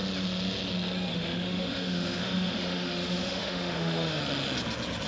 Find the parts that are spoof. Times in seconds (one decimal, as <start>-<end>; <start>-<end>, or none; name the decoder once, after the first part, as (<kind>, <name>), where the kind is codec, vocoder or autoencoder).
1.1-4.2 (autoencoder, DAC-VAE)